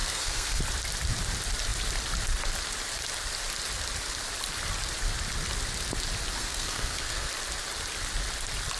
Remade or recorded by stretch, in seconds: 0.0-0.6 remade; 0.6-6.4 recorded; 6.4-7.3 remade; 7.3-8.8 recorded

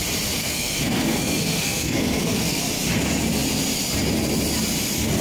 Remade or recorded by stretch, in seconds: 0.0-0.4 recorded; 0.4-2.6 remade; 2.6-5.2 recorded

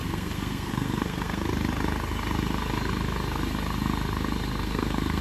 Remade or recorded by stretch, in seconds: 0.0-1.5 remade; 1.5-4.6 recorded; 4.6-5.2 remade

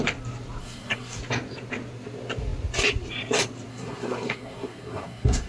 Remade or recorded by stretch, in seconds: 0.0-0.6 recorded; 0.6-1.2 remade; 1.2-3.7 recorded; 3.7-5.5 remade

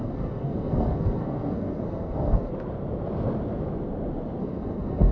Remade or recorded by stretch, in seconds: 0.0-2.5 remade; 2.5-4.4 recorded; 4.4-5.1 remade

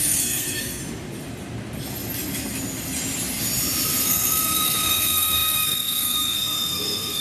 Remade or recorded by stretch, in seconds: 0.0-0.8 remade; 0.8-4.0 recorded; 4.0-7.2 remade

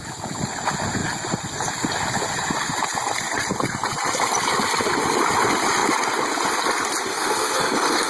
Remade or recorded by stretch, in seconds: 0.0-7.1 recorded; 7.1-8.1 remade